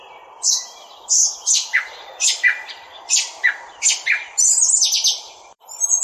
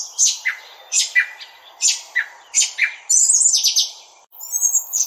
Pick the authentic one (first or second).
second